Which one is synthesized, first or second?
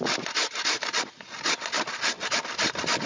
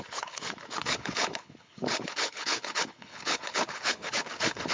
second